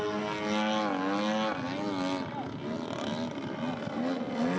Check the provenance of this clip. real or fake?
real